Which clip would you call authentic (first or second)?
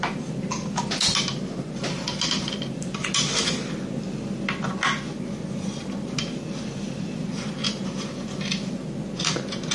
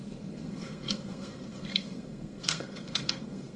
first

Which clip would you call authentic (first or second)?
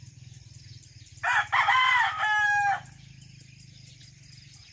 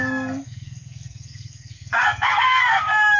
first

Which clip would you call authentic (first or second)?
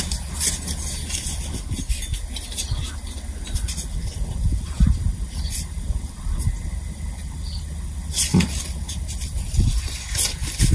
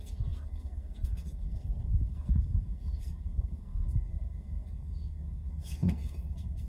first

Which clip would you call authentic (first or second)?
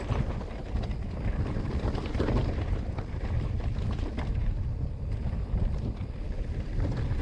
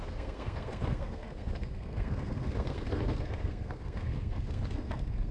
first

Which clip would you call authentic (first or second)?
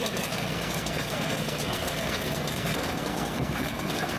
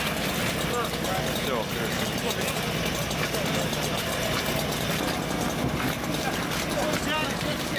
second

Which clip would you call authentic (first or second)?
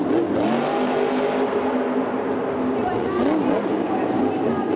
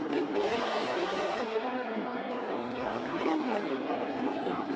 first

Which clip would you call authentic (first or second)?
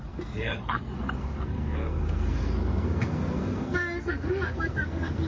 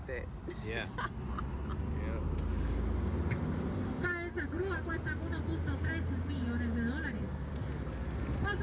second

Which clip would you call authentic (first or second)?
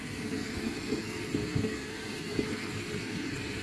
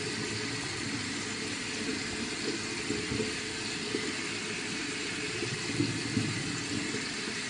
second